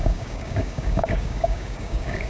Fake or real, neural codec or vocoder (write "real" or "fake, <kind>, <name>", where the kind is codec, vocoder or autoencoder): fake, codec, DAC